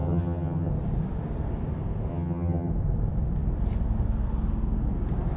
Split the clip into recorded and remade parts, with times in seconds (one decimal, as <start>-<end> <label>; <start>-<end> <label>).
0.0-0.7 remade; 0.7-2.1 recorded; 2.1-2.7 remade; 2.7-5.4 recorded

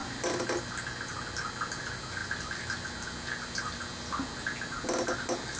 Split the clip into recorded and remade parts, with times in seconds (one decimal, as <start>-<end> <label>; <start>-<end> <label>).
0.0-5.6 recorded

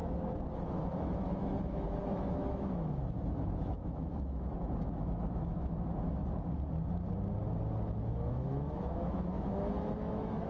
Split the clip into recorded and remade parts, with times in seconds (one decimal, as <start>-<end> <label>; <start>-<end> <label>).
0.0-0.7 recorded; 0.7-6.2 remade; 6.2-8.3 recorded; 8.3-10.5 remade

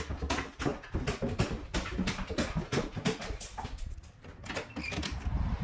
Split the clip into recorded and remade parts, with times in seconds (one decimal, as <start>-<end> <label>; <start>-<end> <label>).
0.0-0.7 recorded; 0.7-3.9 remade; 3.9-5.6 recorded